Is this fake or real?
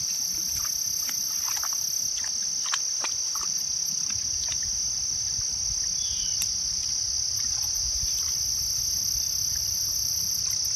real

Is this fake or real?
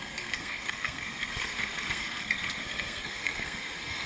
fake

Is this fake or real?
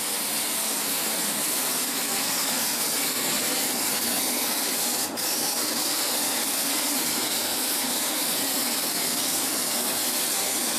fake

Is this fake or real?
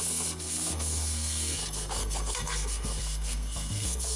fake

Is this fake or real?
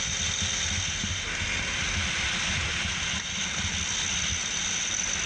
real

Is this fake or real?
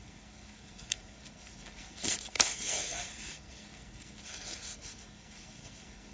fake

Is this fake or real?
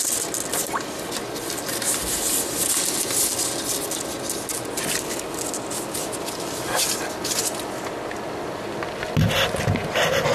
real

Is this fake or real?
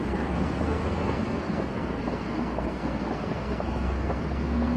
fake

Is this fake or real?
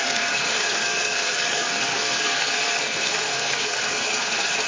fake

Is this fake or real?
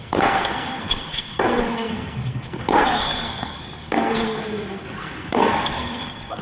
fake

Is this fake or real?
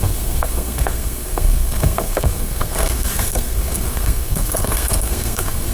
fake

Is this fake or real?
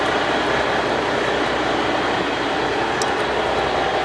real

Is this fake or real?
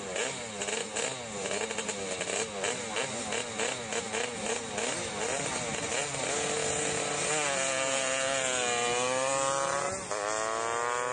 real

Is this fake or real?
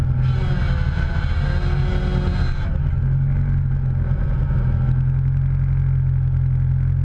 real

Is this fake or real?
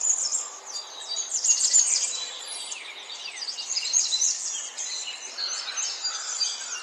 real